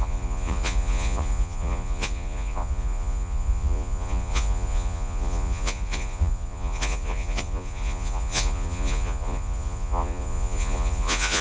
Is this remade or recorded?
remade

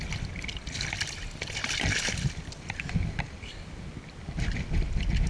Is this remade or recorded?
recorded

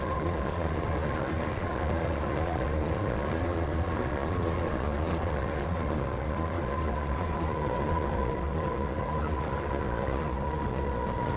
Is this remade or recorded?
remade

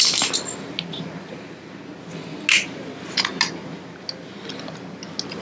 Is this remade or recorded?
recorded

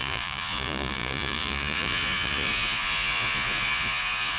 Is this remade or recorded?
remade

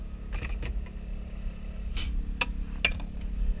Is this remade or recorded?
recorded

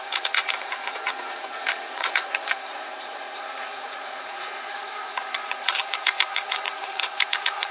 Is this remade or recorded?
remade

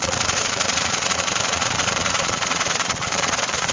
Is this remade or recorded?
remade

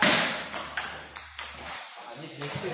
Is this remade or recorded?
recorded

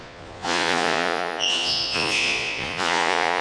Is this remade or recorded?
remade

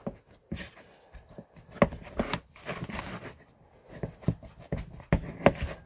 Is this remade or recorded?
recorded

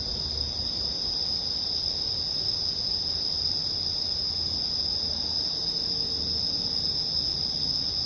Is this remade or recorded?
recorded